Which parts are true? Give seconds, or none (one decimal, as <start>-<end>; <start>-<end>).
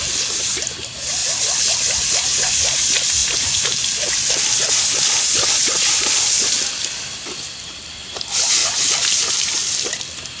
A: 0.0-10.4